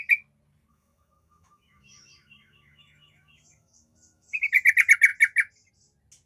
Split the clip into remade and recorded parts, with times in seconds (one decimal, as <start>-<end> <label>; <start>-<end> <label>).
0.0-0.7 recorded; 0.7-4.5 remade; 4.5-6.3 recorded